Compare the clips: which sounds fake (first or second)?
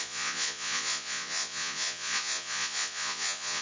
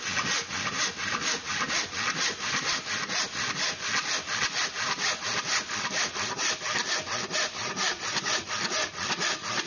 first